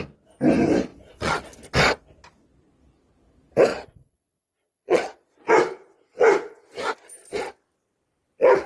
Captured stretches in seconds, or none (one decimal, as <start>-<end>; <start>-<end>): 0.0-0.9; 1.4-3.7; 5.4-8.7